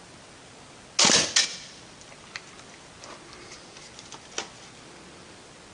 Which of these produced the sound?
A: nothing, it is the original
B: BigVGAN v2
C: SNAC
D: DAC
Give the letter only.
A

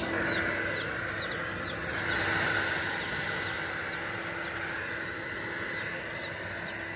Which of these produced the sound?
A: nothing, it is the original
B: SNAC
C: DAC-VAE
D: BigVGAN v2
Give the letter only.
A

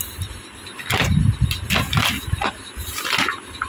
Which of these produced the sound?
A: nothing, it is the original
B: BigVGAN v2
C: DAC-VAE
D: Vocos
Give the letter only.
A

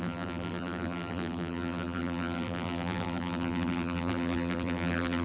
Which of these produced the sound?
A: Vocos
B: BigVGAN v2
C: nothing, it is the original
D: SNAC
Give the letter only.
B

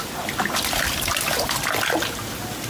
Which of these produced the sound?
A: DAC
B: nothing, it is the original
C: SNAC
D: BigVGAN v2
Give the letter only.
B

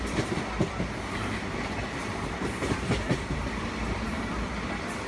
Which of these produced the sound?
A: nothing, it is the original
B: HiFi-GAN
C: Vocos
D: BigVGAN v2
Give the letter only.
D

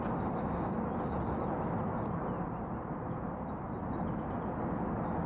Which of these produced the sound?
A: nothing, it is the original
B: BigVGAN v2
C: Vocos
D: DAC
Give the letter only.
A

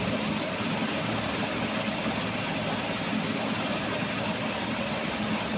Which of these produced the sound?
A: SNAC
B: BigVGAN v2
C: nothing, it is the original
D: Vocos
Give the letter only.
C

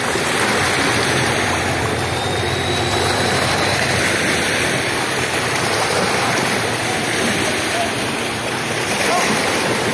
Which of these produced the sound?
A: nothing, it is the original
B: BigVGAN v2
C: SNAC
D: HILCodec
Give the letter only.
B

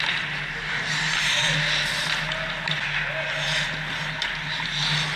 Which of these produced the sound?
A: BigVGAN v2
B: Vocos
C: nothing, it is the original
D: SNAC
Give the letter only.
C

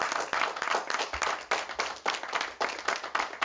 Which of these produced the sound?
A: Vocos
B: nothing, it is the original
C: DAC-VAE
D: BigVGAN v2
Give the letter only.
B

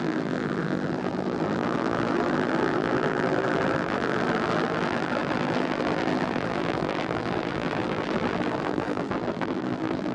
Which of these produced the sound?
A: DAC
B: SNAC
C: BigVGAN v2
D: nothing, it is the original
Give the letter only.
C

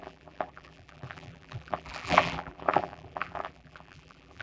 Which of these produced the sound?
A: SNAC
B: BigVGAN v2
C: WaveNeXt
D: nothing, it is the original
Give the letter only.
B